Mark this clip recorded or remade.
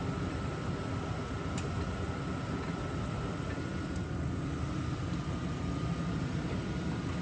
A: recorded